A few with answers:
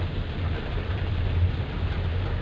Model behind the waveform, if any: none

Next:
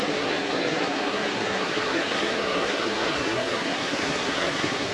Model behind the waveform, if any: codec, SNAC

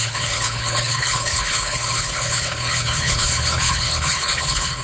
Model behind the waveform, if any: codec, HILCodec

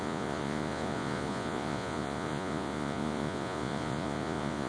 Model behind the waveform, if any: vocoder, Vocos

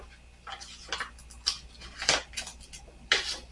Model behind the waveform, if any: none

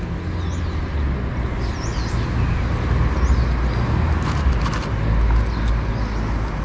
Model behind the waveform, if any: none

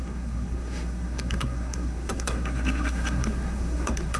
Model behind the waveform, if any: codec, SNAC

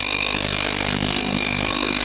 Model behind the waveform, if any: codec, SNAC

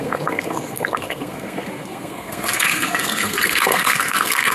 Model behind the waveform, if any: codec, SNAC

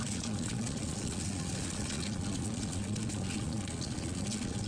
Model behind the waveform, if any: vocoder, Vocos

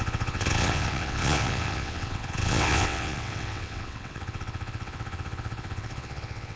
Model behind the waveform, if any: vocoder, WaveNeXt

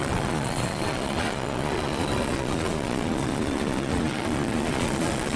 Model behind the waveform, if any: vocoder, Vocos